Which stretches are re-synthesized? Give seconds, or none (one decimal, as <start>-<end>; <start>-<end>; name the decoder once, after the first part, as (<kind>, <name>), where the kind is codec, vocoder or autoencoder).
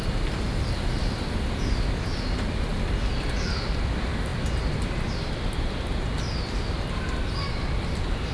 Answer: none